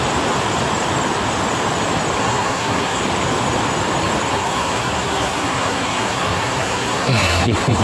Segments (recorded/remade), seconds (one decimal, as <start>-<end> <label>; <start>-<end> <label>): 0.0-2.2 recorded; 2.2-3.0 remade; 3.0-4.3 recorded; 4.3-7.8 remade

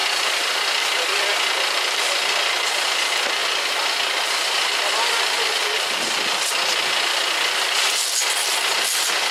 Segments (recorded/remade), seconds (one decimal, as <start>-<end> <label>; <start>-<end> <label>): 0.0-9.3 recorded

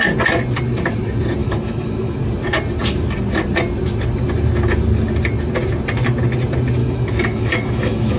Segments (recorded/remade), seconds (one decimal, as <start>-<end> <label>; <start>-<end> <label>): 0.0-1.4 recorded; 1.4-2.2 remade; 2.2-6.8 recorded; 6.8-8.2 remade

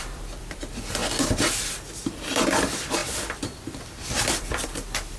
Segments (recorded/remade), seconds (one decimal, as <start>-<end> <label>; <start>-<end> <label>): 0.0-5.2 remade

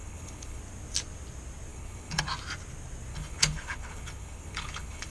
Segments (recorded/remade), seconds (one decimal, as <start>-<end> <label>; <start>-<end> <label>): 0.0-0.6 remade; 0.6-1.7 recorded; 1.7-2.2 remade; 2.2-3.1 recorded; 3.1-5.1 remade

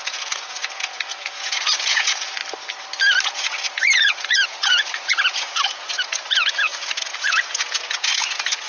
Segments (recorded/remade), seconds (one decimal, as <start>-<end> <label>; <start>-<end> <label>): 0.0-2.4 remade; 2.4-3.3 recorded; 3.3-8.7 remade

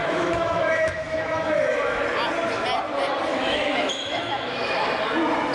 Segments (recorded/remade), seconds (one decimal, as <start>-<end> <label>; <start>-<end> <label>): 0.0-2.0 remade; 2.0-3.3 recorded; 3.3-4.9 remade; 4.9-5.5 recorded

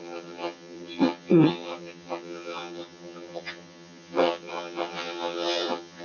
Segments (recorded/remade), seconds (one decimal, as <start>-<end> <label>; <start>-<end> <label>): 0.0-6.0 remade